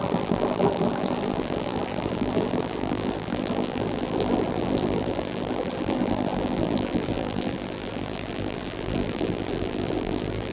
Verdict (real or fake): fake